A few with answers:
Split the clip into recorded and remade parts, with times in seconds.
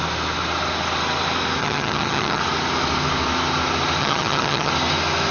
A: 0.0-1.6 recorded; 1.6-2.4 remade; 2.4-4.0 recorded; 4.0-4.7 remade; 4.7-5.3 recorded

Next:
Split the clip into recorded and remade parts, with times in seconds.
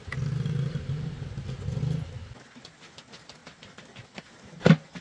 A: 0.0-5.0 recorded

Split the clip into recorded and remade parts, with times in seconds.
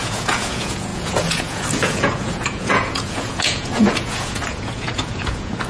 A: 0.0-5.7 remade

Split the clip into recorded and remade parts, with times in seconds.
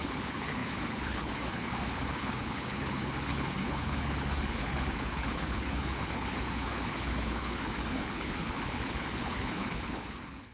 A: 0.0-10.5 remade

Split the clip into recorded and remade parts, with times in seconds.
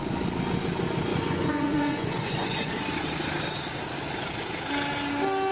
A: 0.0-1.1 recorded; 1.1-2.8 remade; 2.8-5.5 recorded